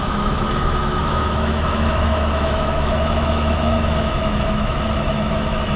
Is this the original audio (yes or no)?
no